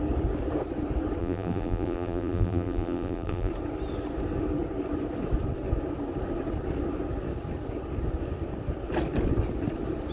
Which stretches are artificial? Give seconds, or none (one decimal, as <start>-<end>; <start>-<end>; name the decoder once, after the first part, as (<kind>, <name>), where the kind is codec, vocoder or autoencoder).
1.2-3.5 (vocoder, BigVGAN v2)